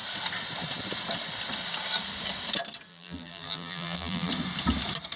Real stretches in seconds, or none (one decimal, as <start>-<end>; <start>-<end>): 0.0-2.9; 4.3-5.2